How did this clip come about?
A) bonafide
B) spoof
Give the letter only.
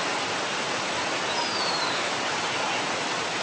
A